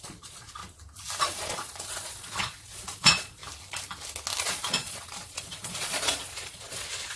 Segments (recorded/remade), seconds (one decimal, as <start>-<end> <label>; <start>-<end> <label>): 0.0-0.6 remade; 0.6-1.2 recorded; 1.2-3.4 remade; 3.4-4.4 recorded; 4.4-7.2 remade

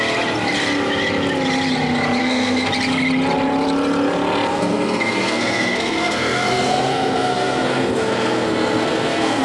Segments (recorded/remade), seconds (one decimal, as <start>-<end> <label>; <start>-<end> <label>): 0.0-2.2 recorded; 2.2-2.7 remade; 2.7-4.5 recorded; 4.5-9.4 remade

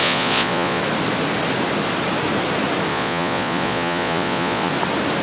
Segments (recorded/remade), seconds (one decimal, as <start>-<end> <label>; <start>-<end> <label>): 0.0-0.8 remade; 0.8-2.9 recorded; 2.9-4.7 remade; 4.7-5.2 recorded

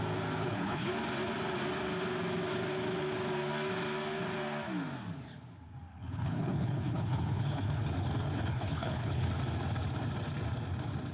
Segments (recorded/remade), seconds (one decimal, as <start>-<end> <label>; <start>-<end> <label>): 0.0-0.4 recorded; 0.4-0.9 remade; 0.9-5.9 recorded; 5.9-7.8 remade; 7.8-8.5 recorded; 8.5-9.3 remade; 9.3-11.1 recorded

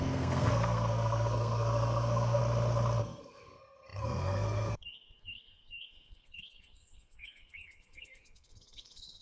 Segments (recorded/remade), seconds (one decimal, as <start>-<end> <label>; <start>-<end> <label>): 0.0-2.4 remade; 2.4-3.0 recorded; 3.0-9.2 remade

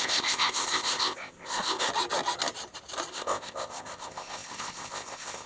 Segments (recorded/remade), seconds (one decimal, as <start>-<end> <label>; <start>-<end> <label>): 0.0-1.9 remade; 1.9-3.1 recorded; 3.1-5.5 remade

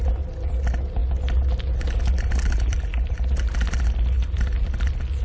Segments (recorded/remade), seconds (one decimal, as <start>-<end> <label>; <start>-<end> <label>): 0.0-5.2 recorded

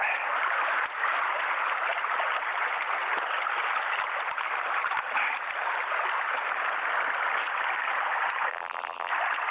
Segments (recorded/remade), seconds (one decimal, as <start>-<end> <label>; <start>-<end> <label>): 0.0-8.5 recorded; 8.5-9.1 remade; 9.1-9.5 recorded